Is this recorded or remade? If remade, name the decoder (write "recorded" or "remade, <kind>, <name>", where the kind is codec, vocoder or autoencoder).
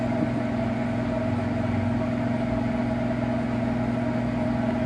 recorded